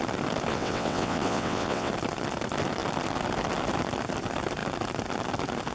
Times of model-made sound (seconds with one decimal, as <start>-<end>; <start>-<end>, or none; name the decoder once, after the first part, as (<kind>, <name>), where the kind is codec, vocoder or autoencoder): 0.5-1.9 (vocoder, WaveNeXt)